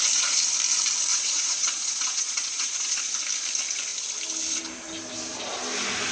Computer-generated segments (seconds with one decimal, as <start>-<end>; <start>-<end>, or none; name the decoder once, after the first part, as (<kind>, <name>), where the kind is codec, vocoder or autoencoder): 1.1-3.1 (vocoder, Vocos)